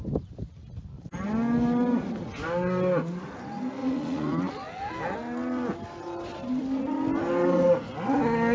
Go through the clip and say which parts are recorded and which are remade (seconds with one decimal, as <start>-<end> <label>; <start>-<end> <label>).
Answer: 0.0-3.8 recorded; 3.8-4.5 remade; 4.5-8.5 recorded